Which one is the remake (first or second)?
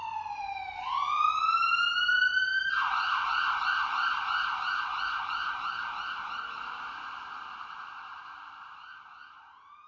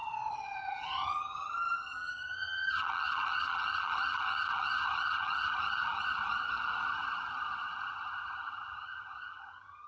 second